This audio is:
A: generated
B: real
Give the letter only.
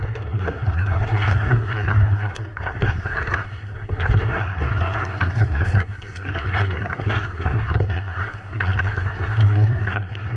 A